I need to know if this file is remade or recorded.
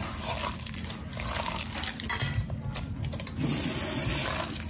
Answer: recorded